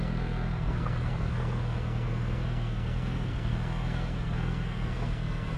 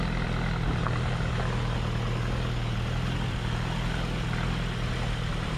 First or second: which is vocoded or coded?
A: first